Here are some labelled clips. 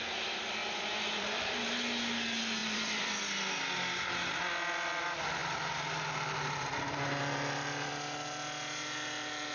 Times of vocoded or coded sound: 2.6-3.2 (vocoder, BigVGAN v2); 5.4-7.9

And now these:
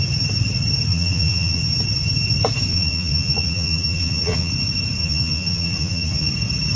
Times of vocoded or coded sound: 0.9-1.6 (vocoder, Vocos); 2.7-4.5; 5.0-6.3

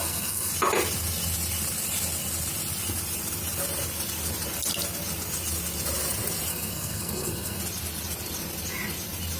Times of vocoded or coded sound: 0.0-0.5 (codec, SNAC); 6.5-7.6